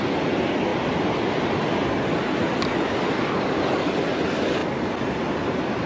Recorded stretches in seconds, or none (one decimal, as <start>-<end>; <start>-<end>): 0.0-5.9